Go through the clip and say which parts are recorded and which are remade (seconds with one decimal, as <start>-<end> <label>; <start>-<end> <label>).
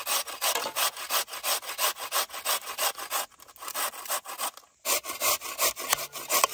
0.0-6.5 recorded